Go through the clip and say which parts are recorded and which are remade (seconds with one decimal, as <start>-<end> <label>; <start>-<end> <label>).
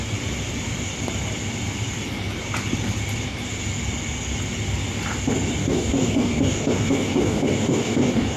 0.0-5.6 recorded; 5.6-8.4 remade